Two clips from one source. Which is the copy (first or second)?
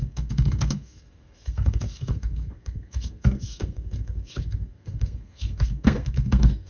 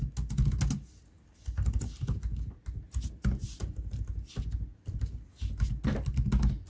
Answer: first